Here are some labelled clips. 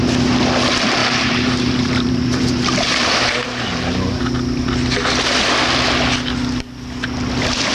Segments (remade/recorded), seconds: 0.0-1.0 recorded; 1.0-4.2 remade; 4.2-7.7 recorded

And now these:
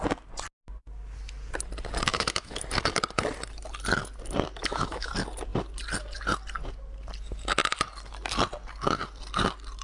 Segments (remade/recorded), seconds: 0.0-2.1 recorded; 2.1-2.6 remade; 2.6-4.6 recorded; 4.6-5.1 remade; 5.1-9.8 recorded

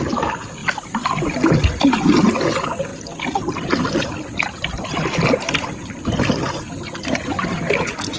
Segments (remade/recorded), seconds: 0.0-0.6 recorded; 0.6-1.7 remade; 1.7-2.9 recorded; 2.9-6.6 remade; 6.6-8.2 recorded

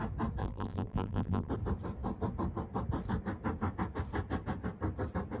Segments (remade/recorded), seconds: 0.0-0.4 recorded; 0.4-1.5 remade; 1.5-5.4 recorded